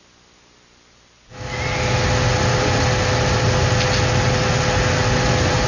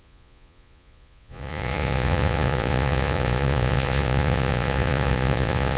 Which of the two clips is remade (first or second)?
second